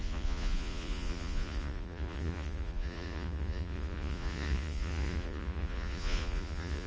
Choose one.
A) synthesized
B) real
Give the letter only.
A